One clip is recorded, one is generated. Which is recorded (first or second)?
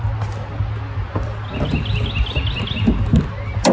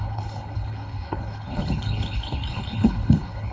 first